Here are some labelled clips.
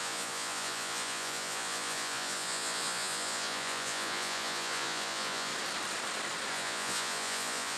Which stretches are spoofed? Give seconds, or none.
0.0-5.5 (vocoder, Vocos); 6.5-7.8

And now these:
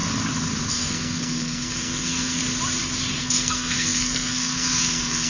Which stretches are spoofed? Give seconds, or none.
0.7-2.4 (codec, SNAC); 3.2-5.3

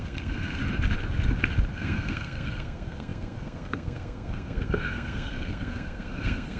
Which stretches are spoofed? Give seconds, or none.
0.0-0.6 (codec, SNAC); 1.7-6.6

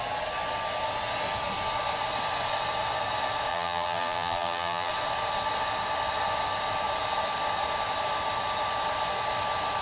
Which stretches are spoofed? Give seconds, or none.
3.5-4.9 (vocoder, BigVGAN v2)

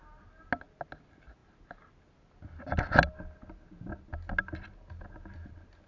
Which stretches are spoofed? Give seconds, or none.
none

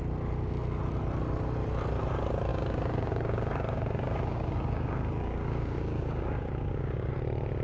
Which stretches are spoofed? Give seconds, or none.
2.5-7.1 (codec, DAC)

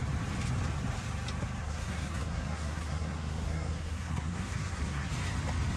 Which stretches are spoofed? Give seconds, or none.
1.6-5.1 (codec, SNAC)

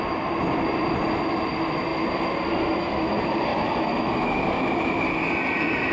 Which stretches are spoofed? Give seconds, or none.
3.5-4.4 (autoencoder, DAC-VAE)